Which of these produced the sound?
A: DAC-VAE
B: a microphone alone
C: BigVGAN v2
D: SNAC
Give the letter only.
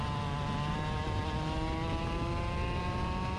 B